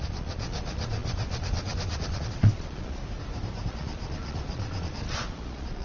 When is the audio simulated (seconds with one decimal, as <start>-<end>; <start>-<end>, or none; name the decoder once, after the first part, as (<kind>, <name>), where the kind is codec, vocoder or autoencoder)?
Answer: 0.0-3.0 (vocoder, Vocos); 3.7-5.8